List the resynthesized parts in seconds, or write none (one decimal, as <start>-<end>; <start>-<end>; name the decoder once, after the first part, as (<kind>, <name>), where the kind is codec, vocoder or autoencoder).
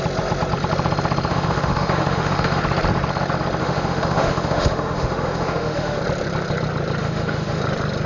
1.3-2.6 (autoencoder, DAC-VAE); 3.6-6.0; 7.0-7.6